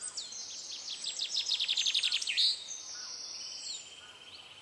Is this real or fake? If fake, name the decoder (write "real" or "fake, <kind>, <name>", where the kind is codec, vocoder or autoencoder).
real